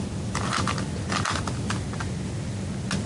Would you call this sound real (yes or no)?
yes